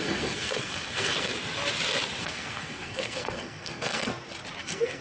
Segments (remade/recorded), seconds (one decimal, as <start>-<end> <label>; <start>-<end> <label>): 0.0-1.3 remade; 1.3-2.2 recorded; 2.2-4.1 remade; 4.1-4.6 recorded; 4.6-5.0 remade